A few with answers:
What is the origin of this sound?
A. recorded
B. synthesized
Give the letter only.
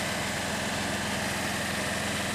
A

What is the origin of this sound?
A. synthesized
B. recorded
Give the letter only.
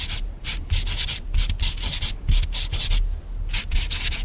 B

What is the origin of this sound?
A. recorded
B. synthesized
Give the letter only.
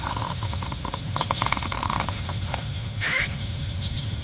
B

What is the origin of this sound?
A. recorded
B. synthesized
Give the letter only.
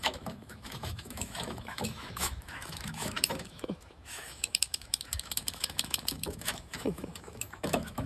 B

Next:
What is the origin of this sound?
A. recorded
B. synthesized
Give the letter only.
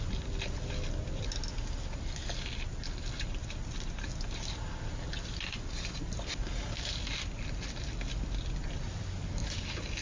A